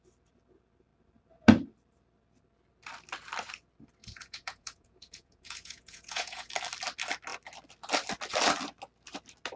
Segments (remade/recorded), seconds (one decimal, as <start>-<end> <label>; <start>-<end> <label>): 0.0-4.0 recorded; 4.0-6.5 remade; 6.5-9.6 recorded